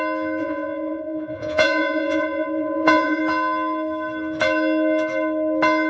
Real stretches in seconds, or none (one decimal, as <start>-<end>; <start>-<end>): 0.0-0.4; 3.2-5.9